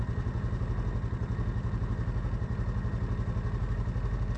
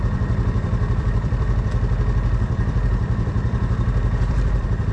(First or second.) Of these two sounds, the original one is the first